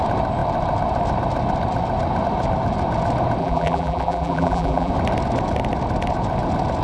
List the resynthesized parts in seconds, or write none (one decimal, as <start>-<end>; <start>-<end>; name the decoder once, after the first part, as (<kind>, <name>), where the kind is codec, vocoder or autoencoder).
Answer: 3.4-4.9 (vocoder, BigVGAN v2)